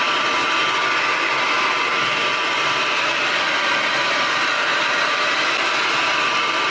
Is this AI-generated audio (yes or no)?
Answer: no